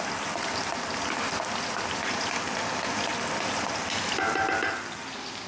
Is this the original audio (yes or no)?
yes